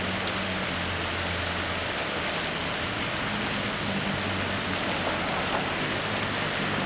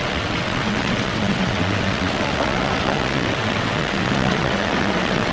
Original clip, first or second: first